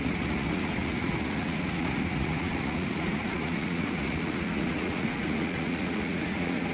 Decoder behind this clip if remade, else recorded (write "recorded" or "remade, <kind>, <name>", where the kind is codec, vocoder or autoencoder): remade, vocoder, Vocos